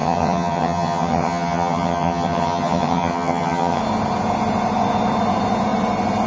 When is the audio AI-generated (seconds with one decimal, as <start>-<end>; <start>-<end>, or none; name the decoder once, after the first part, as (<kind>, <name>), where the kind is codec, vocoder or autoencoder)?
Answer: 0.0-3.8 (vocoder, HiFi-GAN)